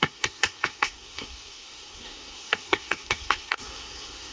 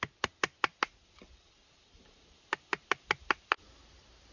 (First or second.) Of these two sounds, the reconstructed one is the first